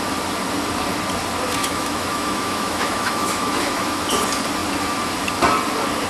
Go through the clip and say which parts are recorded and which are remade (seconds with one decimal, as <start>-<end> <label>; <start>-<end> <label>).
0.0-1.6 recorded; 1.6-4.0 remade; 4.0-6.1 recorded